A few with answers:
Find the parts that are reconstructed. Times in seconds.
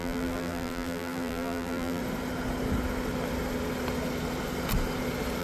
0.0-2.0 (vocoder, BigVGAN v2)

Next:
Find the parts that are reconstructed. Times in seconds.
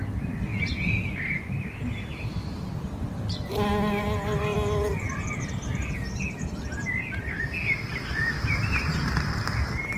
0.5-1.2 (vocoder, BigVGAN v2); 8.1-9.5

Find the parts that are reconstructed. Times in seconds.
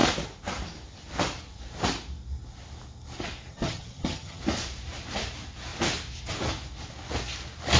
3.5-4.4 (vocoder, HiFi-GAN)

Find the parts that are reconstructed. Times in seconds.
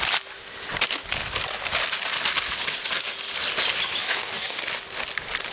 4.0-4.6 (codec, DAC)